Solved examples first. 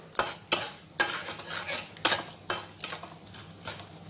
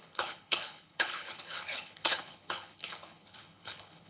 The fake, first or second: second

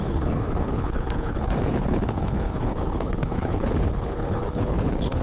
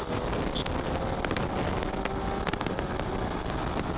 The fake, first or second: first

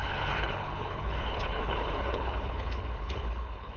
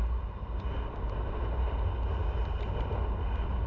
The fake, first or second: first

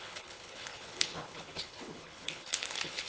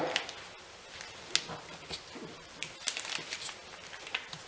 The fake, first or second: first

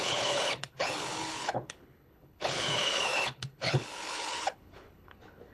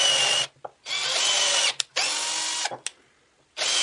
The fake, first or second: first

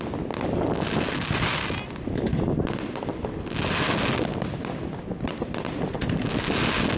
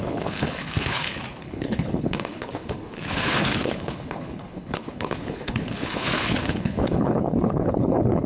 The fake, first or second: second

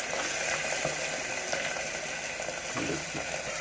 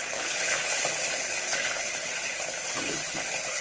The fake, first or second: second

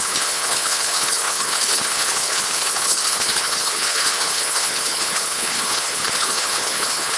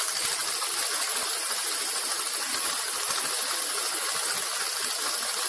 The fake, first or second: first